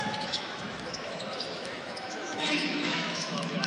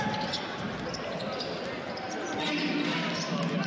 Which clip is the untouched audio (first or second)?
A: second